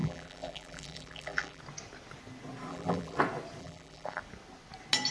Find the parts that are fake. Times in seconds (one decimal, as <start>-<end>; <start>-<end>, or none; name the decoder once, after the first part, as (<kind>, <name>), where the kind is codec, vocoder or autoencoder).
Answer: 0.0-1.6 (vocoder, BigVGAN v2); 2.7-3.2; 3.6-4.2